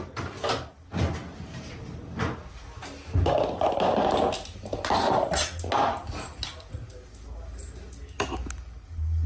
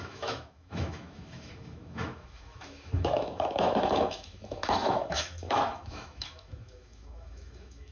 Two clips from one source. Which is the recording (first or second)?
first